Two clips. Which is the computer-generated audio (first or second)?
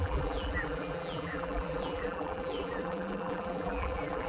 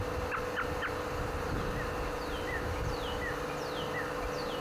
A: first